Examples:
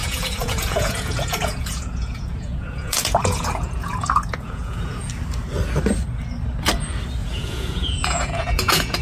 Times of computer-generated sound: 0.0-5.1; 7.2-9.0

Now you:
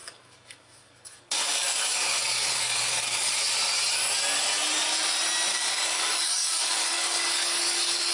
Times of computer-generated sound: 0.0-3.3; 5.5-8.1

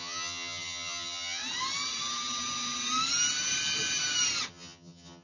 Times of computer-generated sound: 0.0-1.4; 4.5-5.2

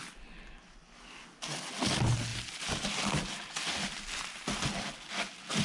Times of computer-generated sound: none

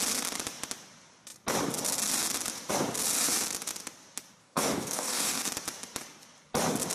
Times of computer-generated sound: 4.4-5.4